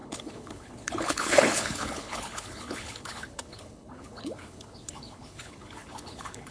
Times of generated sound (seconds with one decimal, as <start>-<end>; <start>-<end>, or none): 0.0-6.5